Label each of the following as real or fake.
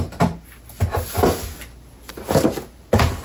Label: real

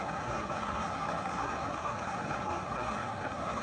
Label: fake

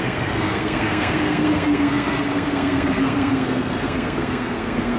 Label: fake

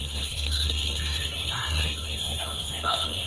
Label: fake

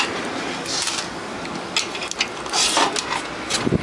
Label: real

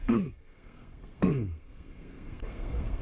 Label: fake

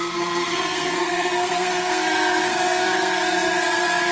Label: fake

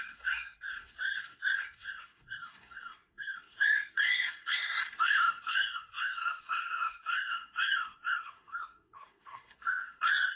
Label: fake